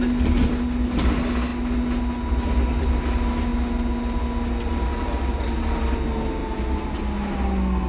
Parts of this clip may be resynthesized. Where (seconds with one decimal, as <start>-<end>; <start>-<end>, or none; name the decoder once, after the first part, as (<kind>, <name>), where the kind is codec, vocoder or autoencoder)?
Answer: none